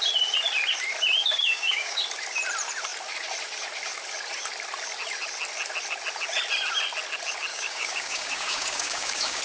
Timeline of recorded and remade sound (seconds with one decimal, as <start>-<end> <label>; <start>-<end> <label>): 0.0-1.2 recorded; 1.2-2.0 remade; 2.0-7.5 recorded; 7.5-9.4 remade

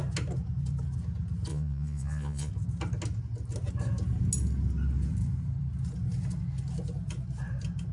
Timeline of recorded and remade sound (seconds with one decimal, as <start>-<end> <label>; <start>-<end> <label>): 0.0-1.5 recorded; 1.5-2.5 remade; 2.5-7.9 recorded

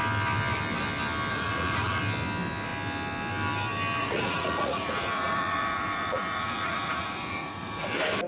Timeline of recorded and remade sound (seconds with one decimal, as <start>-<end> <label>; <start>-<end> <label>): 0.0-1.3 recorded; 1.3-2.0 remade; 2.0-4.0 recorded; 4.0-7.9 remade; 7.9-8.3 recorded

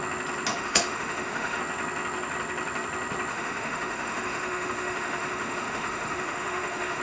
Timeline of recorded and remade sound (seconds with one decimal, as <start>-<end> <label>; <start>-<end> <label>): 0.0-0.5 recorded; 0.5-1.6 remade; 1.6-3.3 recorded; 3.3-7.0 remade

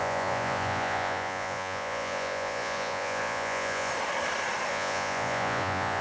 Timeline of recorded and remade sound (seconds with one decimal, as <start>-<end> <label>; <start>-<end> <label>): 0.0-3.9 remade; 3.9-4.7 recorded; 4.7-6.0 remade

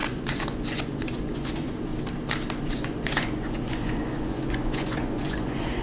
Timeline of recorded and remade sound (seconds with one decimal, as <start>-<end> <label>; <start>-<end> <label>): 0.0-1.9 remade; 1.9-2.7 recorded; 2.7-5.8 remade

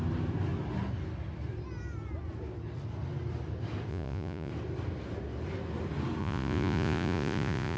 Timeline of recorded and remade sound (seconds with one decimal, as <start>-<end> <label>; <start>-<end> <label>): 0.0-3.9 recorded; 3.9-4.5 remade; 4.5-6.2 recorded; 6.2-7.8 remade

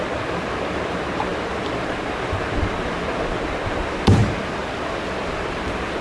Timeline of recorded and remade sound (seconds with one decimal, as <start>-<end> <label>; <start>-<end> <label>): 0.0-4.2 recorded; 4.2-5.6 remade; 5.6-6.0 recorded